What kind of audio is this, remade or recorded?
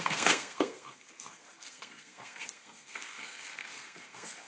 remade